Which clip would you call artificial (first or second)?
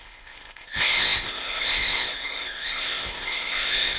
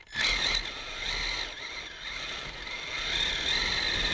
first